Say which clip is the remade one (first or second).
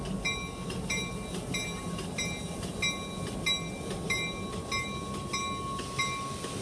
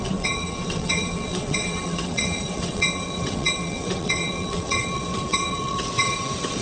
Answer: second